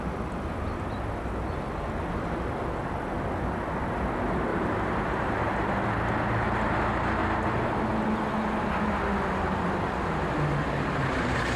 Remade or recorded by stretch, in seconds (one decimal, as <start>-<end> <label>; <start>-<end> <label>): 0.0-4.5 recorded; 4.5-5.3 remade; 5.3-11.6 recorded